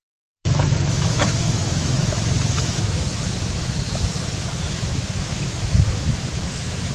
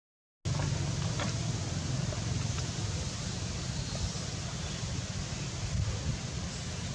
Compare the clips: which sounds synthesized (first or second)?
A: first